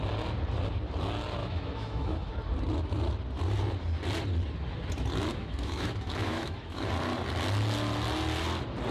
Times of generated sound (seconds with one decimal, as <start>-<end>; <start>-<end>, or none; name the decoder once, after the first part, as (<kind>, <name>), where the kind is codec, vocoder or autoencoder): 1.4-2.3 (autoencoder, DAC-VAE); 5.3-6.9